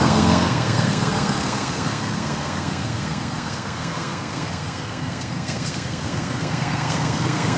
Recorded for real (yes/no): no